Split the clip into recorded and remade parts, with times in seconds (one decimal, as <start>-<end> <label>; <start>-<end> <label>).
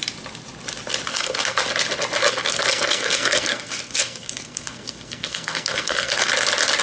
0.0-1.1 recorded; 1.1-1.6 remade; 1.6-2.2 recorded; 2.2-6.3 remade; 6.3-6.8 recorded